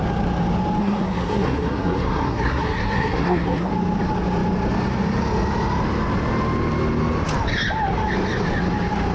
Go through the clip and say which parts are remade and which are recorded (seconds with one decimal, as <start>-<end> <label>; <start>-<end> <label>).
0.0-0.8 recorded; 0.8-3.7 remade; 3.7-9.1 recorded